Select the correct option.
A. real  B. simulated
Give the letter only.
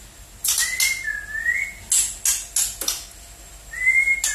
A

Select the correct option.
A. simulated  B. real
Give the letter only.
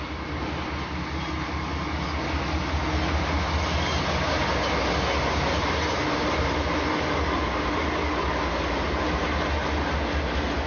B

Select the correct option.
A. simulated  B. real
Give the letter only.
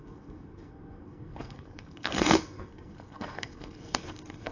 A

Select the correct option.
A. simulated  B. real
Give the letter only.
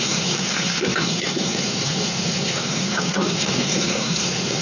A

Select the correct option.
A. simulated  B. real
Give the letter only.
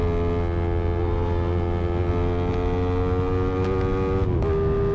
B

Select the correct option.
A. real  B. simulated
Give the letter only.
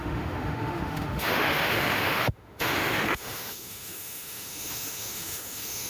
B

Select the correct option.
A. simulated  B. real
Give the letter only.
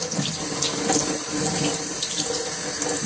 B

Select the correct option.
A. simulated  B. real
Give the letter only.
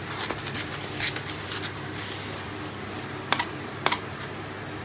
B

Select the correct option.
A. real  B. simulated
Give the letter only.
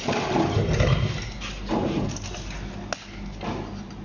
A